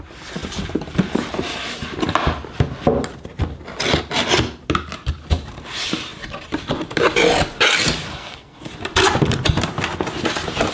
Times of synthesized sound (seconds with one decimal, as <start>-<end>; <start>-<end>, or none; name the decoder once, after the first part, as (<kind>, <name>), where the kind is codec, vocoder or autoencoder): 8.1-8.7 (codec, SNAC)